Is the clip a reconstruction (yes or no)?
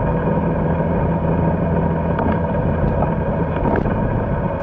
no